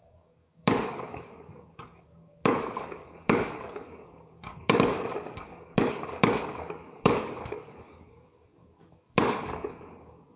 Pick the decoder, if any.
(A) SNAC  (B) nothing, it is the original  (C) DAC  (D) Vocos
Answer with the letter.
C